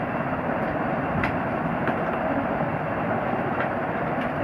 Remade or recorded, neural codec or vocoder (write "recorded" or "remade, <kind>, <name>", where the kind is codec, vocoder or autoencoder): recorded